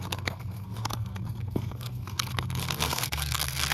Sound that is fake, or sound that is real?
fake